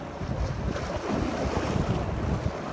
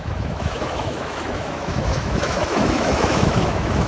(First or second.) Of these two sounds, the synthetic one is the second